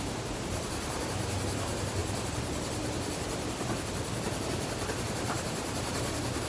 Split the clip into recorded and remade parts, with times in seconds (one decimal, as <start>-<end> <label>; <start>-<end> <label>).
0.0-2.0 remade; 2.0-5.0 recorded; 5.0-6.5 remade